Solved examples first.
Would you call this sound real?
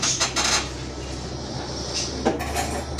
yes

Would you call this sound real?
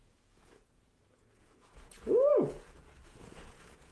no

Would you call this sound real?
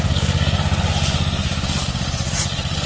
yes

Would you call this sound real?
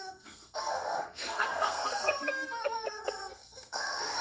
no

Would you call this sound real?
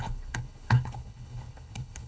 no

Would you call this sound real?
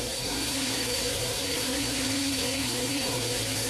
no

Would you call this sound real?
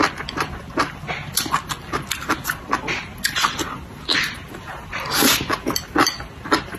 yes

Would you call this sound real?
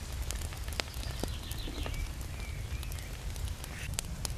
yes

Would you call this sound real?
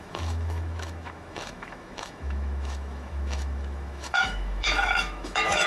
no